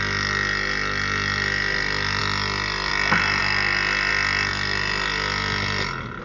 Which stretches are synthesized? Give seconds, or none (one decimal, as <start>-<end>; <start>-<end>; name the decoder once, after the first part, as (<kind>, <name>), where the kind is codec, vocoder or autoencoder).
none